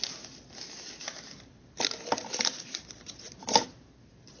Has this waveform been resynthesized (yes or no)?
no